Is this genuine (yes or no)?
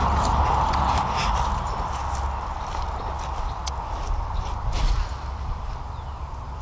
yes